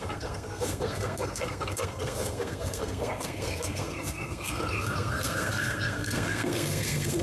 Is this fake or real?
fake